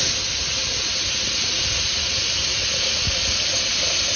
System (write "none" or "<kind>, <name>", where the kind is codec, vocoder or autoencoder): none